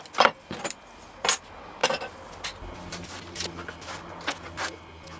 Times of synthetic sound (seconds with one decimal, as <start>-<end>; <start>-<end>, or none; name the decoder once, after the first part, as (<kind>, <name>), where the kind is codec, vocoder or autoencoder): none